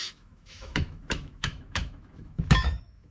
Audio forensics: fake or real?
fake